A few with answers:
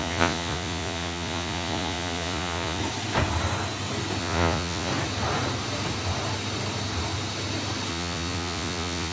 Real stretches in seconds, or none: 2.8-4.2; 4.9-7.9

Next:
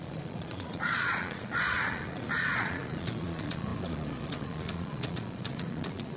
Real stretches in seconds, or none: none

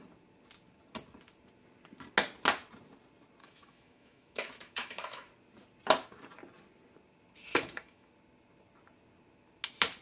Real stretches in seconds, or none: 0.0-3.4; 5.3-7.5; 8.1-10.0

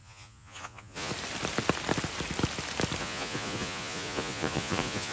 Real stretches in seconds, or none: 1.1-3.0

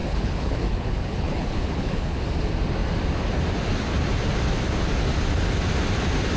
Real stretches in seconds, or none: 2.2-6.4

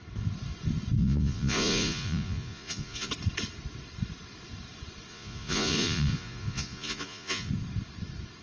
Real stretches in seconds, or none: 0.0-1.0; 3.1-5.1; 7.5-8.4